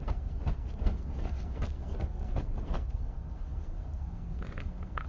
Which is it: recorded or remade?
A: remade